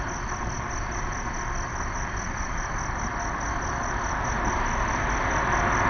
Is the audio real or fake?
real